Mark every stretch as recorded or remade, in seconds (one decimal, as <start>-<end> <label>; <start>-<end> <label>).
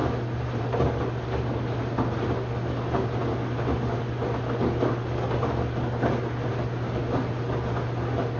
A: 0.0-8.4 recorded